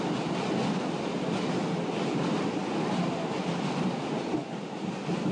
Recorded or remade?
recorded